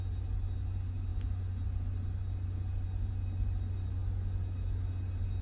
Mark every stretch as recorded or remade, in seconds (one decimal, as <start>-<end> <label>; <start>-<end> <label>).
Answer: 0.0-5.4 recorded